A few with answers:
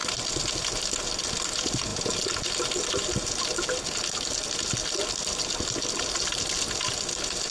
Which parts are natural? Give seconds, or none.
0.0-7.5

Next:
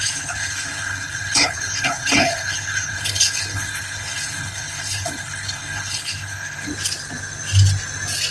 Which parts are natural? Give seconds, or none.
6.7-8.3

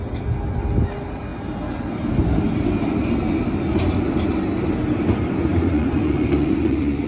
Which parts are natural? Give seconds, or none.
0.0-5.5

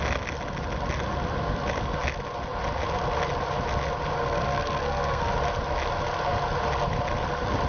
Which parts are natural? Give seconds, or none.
0.0-4.2; 5.3-7.7

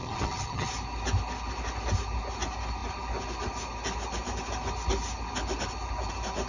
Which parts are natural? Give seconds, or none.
0.7-6.5

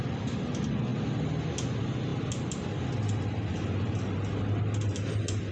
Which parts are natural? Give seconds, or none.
0.0-5.5

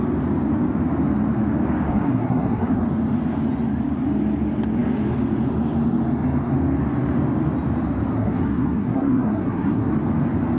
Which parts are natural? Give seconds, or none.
0.0-1.9; 2.8-8.1; 9.9-10.6